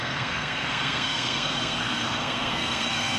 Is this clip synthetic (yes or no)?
yes